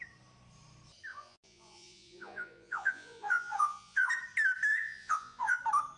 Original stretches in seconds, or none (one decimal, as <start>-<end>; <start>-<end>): 0.0-1.1; 4.1-4.7; 5.6-6.0